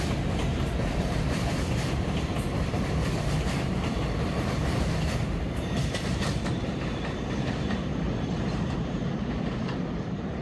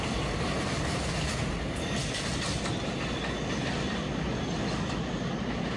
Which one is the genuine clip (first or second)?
second